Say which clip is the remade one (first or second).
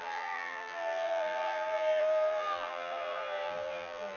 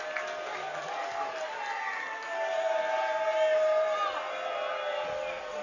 first